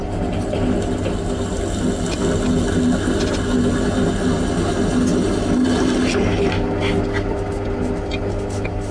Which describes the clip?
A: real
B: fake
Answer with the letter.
A